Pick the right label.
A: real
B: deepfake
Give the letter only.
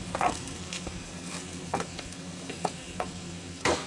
B